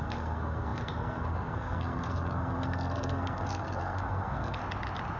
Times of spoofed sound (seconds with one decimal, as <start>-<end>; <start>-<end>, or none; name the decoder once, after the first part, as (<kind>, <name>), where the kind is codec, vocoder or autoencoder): 0.0-4.6 (codec, SNAC)